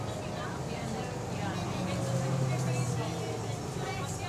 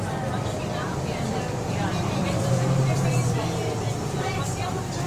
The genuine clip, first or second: first